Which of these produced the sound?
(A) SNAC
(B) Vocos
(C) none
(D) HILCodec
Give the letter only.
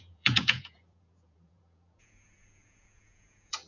B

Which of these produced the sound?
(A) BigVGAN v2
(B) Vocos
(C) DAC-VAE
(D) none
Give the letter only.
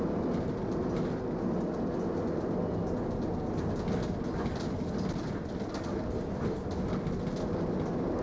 D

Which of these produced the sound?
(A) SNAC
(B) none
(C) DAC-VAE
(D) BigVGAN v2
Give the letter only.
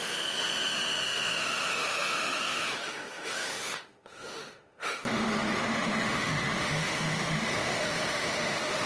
C